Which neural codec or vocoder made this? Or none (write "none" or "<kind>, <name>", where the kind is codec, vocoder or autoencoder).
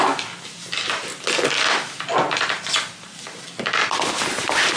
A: none